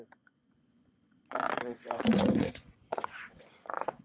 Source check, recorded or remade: remade